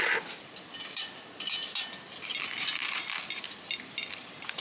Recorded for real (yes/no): yes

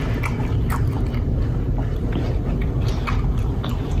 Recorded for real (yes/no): yes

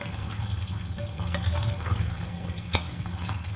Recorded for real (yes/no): no